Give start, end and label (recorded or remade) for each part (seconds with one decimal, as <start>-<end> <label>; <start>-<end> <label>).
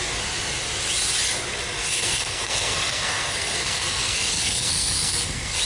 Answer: 0.0-1.8 recorded; 1.8-5.6 remade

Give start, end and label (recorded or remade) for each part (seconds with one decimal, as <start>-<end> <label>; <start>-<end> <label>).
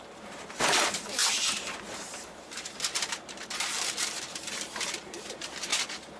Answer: 0.0-5.7 remade; 5.7-6.2 recorded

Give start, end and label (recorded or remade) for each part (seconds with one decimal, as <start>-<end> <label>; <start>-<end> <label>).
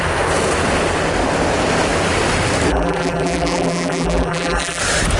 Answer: 0.0-2.7 recorded; 2.7-4.8 remade; 4.8-5.2 recorded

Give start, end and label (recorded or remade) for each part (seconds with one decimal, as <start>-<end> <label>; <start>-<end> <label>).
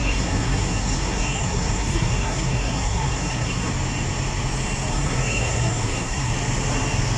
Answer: 0.0-3.7 remade; 3.7-4.9 recorded; 4.9-6.3 remade; 6.3-7.2 recorded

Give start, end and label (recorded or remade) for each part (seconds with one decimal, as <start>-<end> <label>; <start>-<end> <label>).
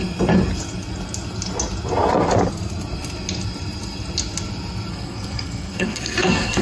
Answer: 0.0-4.9 recorded; 4.9-6.6 remade